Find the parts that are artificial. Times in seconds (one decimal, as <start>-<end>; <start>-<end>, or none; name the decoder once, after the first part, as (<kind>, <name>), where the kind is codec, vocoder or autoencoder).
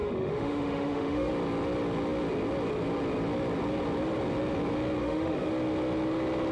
0.0-1.3 (autoencoder, DAC-VAE); 5.0-5.5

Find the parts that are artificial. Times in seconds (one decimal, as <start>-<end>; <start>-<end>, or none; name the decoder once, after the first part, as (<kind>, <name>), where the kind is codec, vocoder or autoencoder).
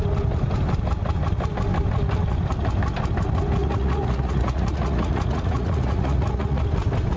3.6-6.6 (vocoder, Vocos)